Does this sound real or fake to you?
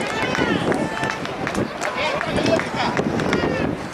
real